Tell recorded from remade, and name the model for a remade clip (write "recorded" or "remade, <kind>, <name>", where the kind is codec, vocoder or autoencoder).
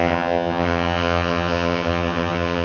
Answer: remade, vocoder, HiFi-GAN